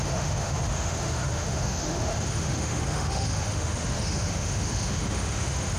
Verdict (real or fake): fake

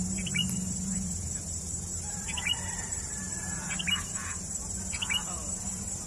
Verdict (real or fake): fake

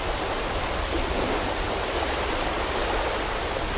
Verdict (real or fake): real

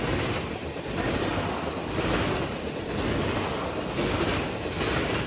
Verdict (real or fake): real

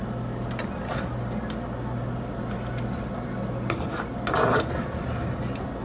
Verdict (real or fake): real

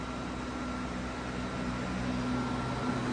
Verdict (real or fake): real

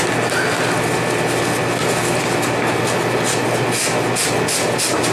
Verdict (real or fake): real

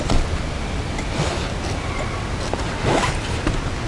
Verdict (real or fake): real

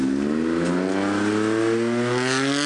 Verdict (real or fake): real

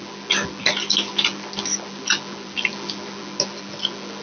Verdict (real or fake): real